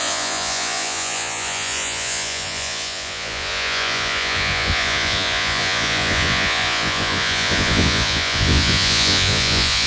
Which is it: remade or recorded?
remade